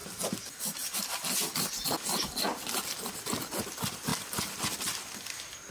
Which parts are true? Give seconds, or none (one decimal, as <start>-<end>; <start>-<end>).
0.0-5.7

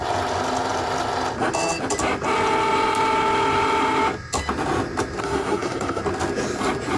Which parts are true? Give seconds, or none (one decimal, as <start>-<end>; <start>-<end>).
0.0-5.2; 6.0-7.0

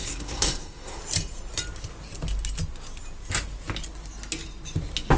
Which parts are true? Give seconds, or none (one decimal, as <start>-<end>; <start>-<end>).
1.0-5.2

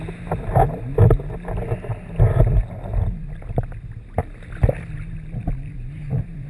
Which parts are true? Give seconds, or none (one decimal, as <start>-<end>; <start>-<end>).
0.0-5.4

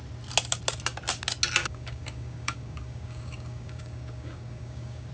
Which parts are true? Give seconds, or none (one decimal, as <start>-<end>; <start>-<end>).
0.0-1.6

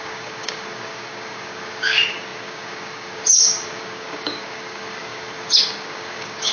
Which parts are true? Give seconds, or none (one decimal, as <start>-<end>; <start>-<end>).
none

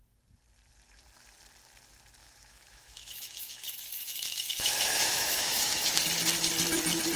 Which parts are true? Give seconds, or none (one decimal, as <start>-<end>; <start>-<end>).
0.0-2.2; 6.0-7.2